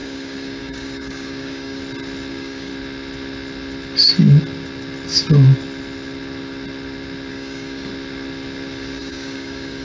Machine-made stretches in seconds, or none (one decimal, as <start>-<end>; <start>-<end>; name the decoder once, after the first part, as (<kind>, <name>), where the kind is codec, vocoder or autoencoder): 0.0-1.8 (codec, DAC); 2.3-2.7; 7.3-7.9; 9.0-9.8